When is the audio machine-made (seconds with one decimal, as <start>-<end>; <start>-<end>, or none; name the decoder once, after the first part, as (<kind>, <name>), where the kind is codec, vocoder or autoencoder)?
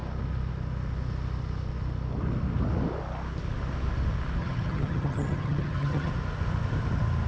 4.4-6.1 (vocoder, HiFi-GAN)